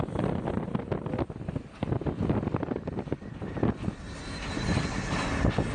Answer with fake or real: real